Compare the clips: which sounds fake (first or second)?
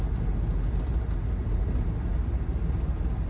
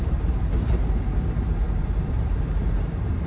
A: second